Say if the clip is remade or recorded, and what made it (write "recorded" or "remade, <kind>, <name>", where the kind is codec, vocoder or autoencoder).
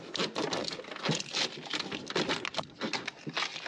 recorded